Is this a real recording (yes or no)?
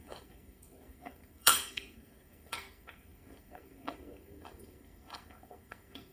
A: no